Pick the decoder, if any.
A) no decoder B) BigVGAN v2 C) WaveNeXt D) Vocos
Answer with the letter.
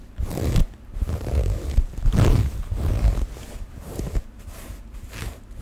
B